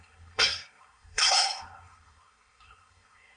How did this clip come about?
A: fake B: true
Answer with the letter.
A